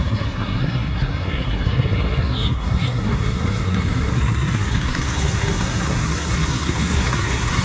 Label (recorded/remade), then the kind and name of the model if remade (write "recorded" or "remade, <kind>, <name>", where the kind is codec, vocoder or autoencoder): remade, codec, SNAC